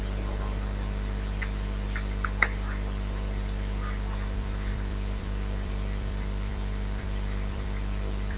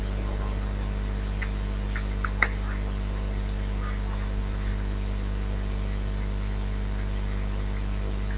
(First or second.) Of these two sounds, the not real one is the first